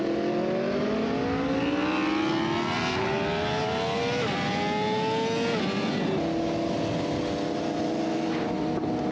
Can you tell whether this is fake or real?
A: real